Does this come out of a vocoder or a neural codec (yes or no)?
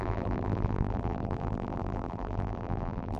yes